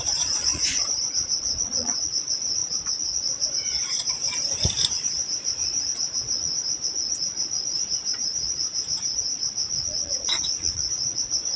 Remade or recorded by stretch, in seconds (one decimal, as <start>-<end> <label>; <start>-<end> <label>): 0.0-4.2 remade; 4.2-4.9 recorded; 4.9-11.6 remade